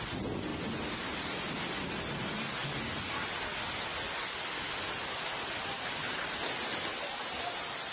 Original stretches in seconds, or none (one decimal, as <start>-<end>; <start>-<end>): 0.0-7.9